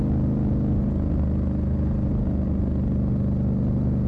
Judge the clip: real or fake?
real